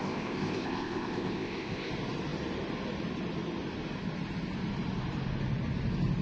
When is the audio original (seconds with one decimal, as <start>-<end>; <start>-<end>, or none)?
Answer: 1.9-6.2